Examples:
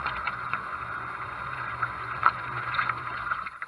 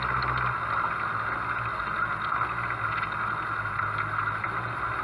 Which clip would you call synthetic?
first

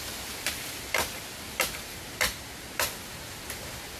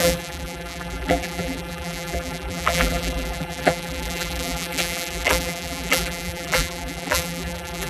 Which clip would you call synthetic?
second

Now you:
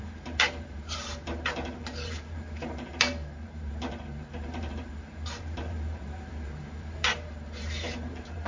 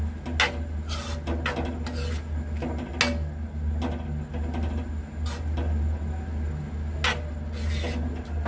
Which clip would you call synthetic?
first